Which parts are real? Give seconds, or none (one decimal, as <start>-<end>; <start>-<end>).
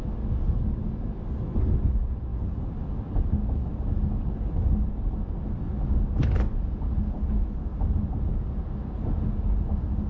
0.0-10.1